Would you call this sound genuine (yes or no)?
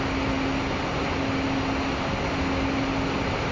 yes